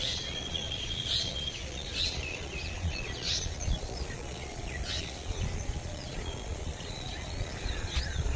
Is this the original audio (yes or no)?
no